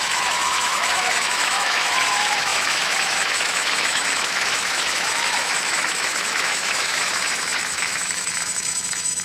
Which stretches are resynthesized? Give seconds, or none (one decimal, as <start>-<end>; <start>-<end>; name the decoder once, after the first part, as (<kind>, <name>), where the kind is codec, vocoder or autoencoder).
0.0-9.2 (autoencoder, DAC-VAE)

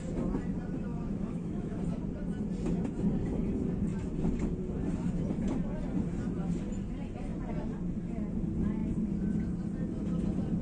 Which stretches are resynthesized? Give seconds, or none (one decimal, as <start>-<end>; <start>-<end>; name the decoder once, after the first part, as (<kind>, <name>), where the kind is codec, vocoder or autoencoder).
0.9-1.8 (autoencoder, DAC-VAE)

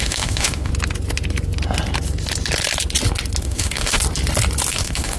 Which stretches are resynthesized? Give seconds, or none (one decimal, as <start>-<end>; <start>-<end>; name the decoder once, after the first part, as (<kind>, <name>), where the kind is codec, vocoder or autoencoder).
0.0-0.7 (autoencoder, DAC-VAE); 3.4-4.0; 4.7-5.2

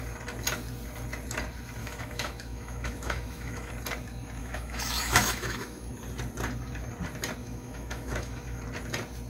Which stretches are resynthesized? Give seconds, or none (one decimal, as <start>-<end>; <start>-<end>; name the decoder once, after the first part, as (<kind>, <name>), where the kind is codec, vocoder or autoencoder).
1.8-3.7 (autoencoder, DAC-VAE); 4.4-5.9; 7.4-8.6

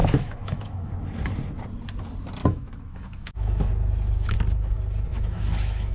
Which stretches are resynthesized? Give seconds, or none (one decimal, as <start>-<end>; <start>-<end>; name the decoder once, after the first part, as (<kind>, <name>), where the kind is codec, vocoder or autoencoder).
0.0-0.9 (autoencoder, DAC-VAE); 2.4-3.7; 5.1-5.9

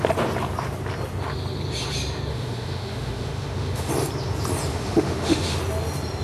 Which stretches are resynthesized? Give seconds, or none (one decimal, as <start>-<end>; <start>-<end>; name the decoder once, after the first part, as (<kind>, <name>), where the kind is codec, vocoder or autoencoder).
2.3-3.9 (autoencoder, DAC-VAE); 4.7-5.6

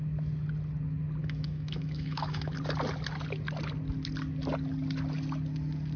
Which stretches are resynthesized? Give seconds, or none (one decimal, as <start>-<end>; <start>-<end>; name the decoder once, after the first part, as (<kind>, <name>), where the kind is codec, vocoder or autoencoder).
1.2-2.5 (autoencoder, DAC-VAE)